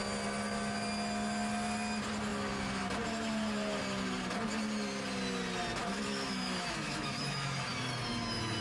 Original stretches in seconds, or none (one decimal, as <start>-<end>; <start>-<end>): 0.0-5.8; 7.7-8.6